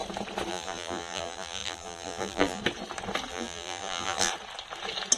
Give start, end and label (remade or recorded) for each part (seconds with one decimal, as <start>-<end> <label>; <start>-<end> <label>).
0.0-0.5 recorded; 0.5-2.6 remade; 2.6-3.3 recorded; 3.3-4.3 remade; 4.3-5.2 recorded